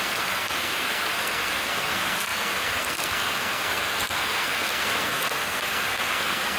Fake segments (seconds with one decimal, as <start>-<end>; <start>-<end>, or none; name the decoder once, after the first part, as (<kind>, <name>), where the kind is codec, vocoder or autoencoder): 0.0-6.6 (codec, SNAC)